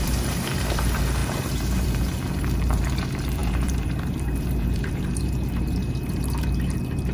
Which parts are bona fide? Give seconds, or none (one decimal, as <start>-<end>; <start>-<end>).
none